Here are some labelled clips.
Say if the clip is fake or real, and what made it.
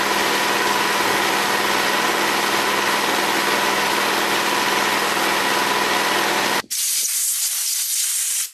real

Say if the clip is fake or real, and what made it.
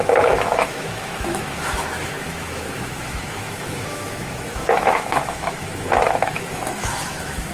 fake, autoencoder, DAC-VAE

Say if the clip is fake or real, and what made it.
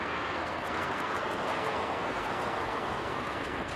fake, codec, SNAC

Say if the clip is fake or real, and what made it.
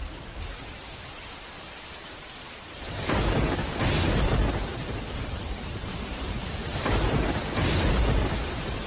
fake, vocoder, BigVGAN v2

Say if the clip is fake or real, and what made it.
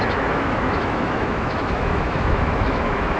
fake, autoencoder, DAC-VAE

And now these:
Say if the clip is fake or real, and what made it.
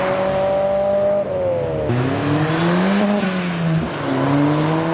real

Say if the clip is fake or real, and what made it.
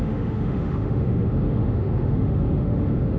fake, autoencoder, DAC-VAE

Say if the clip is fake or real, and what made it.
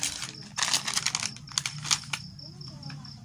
real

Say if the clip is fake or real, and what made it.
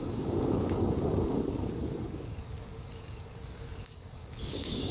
fake, codec, DAC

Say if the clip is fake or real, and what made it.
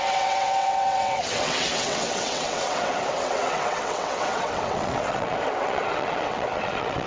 fake, vocoder, WaveNeXt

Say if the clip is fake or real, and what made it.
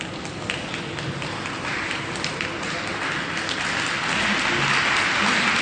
real